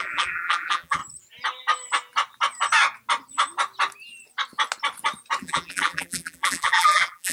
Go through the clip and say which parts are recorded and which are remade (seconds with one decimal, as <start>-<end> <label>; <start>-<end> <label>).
0.0-1.0 remade; 1.0-5.4 recorded; 5.4-7.3 remade